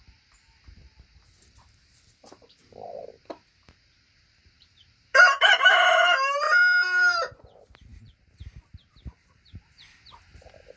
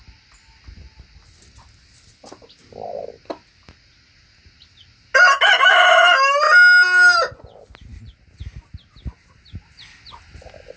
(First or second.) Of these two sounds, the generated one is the first